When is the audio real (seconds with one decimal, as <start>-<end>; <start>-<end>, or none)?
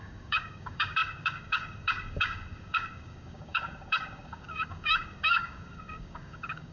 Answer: none